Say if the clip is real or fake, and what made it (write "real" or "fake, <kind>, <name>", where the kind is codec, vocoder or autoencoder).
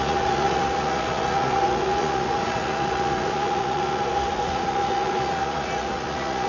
fake, vocoder, Vocos